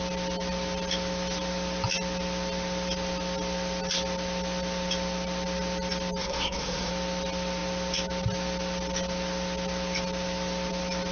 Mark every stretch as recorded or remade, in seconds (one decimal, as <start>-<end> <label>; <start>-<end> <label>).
0.0-6.2 recorded; 6.2-6.9 remade; 6.9-11.1 recorded